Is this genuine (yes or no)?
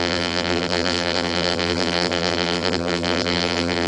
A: no